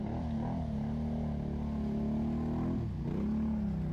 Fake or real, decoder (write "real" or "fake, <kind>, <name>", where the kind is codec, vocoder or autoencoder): real